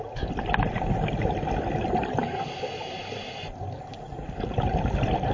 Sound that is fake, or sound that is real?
real